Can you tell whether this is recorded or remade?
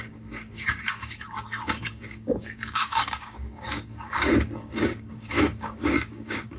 remade